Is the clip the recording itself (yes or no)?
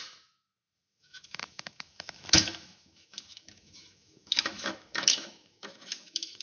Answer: no